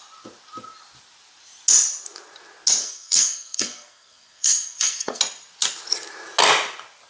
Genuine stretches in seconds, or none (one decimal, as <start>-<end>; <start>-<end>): 0.0-2.8; 5.2-7.1